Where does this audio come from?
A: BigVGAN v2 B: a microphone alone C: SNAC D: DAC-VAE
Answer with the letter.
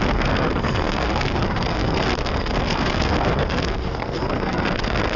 C